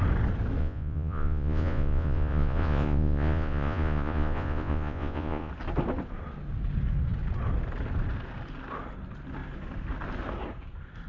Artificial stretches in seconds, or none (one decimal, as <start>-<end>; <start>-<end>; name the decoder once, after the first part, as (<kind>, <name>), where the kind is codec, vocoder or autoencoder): 0.6-5.5 (vocoder, Vocos)